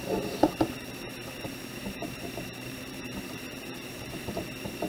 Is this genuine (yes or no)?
no